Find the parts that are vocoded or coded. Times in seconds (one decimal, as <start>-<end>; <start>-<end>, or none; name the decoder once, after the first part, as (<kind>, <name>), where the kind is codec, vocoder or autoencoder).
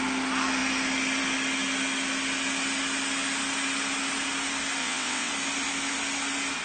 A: 4.8-5.3 (vocoder, WaveNeXt)